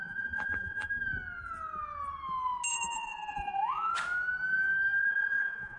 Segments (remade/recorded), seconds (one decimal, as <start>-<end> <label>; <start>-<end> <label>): 0.0-0.9 remade; 0.9-2.7 recorded; 2.7-3.9 remade; 3.9-5.0 recorded; 5.0-5.8 remade